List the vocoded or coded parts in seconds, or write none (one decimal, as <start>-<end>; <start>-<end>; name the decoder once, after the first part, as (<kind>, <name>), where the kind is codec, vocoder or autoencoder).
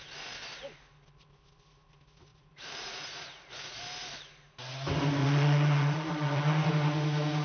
2.3-3.8 (vocoder, Vocos); 5.2-6.7